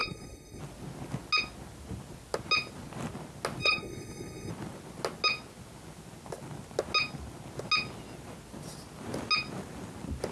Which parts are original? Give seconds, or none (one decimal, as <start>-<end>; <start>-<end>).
0.6-3.6; 4.5-10.3